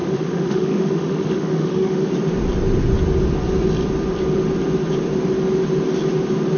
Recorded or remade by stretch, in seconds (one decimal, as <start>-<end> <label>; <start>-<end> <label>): 0.0-2.1 remade; 2.1-6.6 recorded